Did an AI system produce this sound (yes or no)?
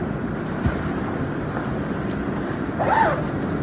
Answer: no